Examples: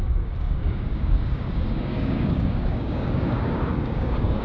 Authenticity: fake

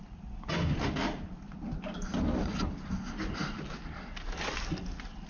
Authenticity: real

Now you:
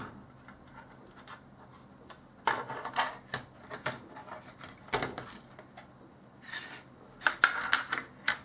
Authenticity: real